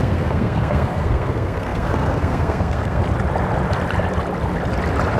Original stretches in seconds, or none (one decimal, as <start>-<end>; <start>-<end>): 3.0-5.2